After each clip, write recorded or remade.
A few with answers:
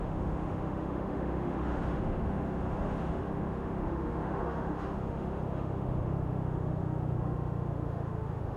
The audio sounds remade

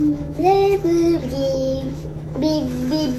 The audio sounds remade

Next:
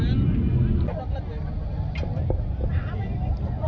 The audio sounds recorded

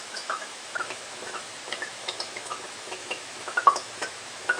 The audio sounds remade